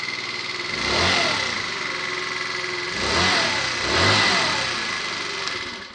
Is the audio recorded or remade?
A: recorded